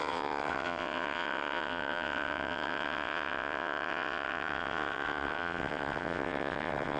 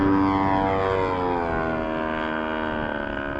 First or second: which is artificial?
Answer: first